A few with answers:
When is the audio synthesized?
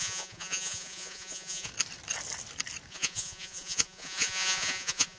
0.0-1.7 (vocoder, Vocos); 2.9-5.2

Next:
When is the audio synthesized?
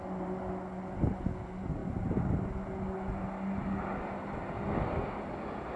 none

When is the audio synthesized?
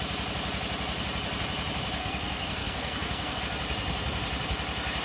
2.0-3.4 (codec, SNAC)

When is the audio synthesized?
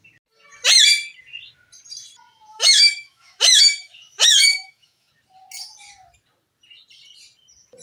2.5-5.1 (autoencoder, DAC-VAE)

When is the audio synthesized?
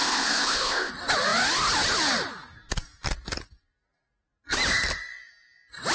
0.0-0.9 (codec, ZipCodec)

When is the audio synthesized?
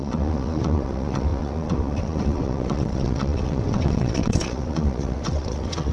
0.0-5.9 (vocoder, WaveNeXt)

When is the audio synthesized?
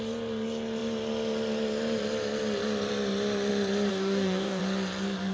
3.9-4.6 (codec, DAC)